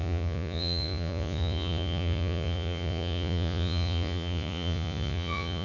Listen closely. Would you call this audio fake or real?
fake